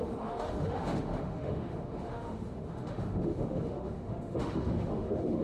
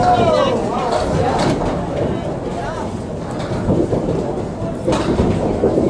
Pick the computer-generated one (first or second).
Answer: first